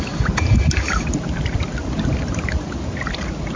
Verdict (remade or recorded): recorded